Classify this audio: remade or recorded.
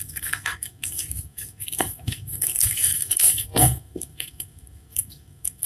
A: remade